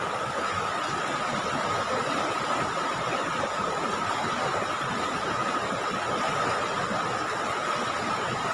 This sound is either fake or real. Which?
real